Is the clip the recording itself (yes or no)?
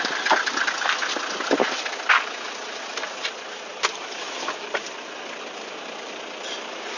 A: yes